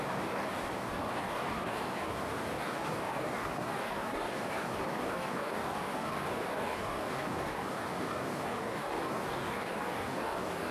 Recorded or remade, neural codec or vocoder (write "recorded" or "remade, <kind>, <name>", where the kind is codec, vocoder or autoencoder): remade, codec, DAC